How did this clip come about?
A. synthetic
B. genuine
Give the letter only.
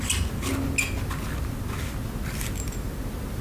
B